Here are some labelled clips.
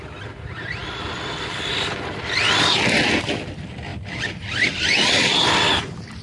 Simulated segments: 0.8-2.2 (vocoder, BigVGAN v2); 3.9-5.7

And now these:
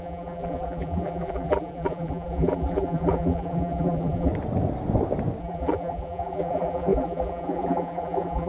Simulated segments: 0.0-4.3 (vocoder, BigVGAN v2); 5.4-8.5

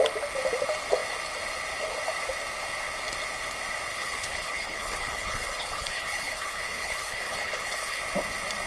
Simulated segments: 3.9-8.0 (codec, HILCodec)

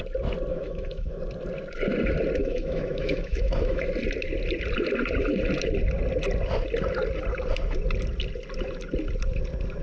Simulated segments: 0.5-1.2 (autoencoder, DAC-VAE); 2.4-3.8

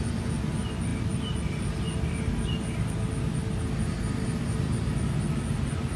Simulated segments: none

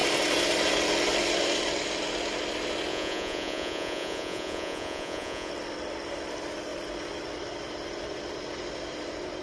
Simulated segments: 2.9-5.5 (vocoder, Vocos)

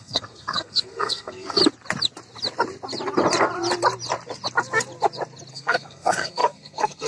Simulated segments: 0.0-1.6 (codec, SNAC); 5.5-7.1

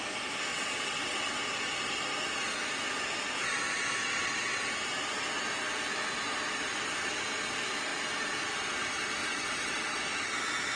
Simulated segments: 0.5-1.4 (vocoder, WaveNeXt); 4.0-4.6; 9.2-10.0